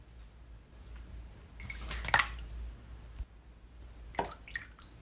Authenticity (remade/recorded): recorded